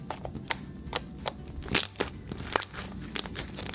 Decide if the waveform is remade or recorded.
recorded